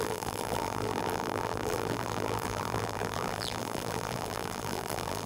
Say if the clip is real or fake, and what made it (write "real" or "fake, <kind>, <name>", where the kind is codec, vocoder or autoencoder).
fake, vocoder, BigVGAN v2